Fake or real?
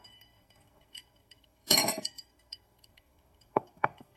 fake